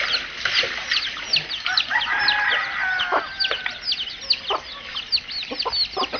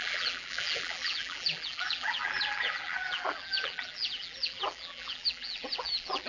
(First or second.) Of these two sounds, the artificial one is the second